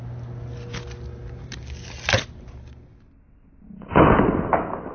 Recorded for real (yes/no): yes